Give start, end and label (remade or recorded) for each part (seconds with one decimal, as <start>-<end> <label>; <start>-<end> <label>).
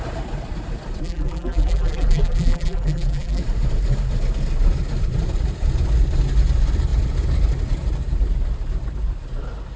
0.0-1.0 recorded; 1.0-3.4 remade; 3.4-9.8 recorded